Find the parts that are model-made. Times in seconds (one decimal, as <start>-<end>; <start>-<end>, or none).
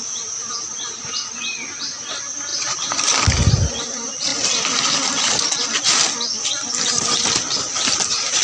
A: 2.5-3.2; 4.3-8.0